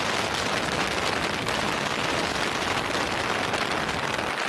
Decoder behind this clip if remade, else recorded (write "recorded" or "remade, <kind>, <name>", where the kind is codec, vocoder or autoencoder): recorded